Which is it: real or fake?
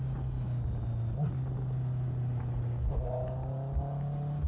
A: real